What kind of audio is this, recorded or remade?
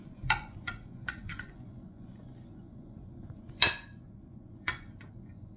remade